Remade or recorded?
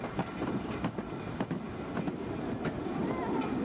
recorded